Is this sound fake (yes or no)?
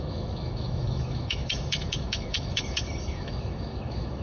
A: yes